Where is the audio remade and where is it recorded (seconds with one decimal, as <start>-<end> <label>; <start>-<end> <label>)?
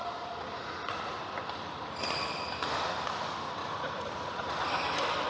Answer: 0.0-1.2 remade; 1.2-3.6 recorded; 3.6-4.5 remade; 4.5-5.3 recorded